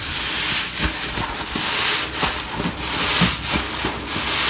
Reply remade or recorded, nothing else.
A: recorded